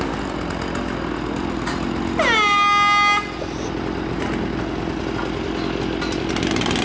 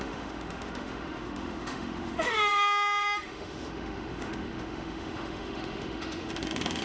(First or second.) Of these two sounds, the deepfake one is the second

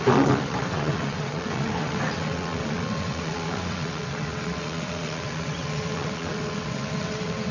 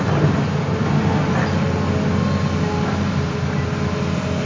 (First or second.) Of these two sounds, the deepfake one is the first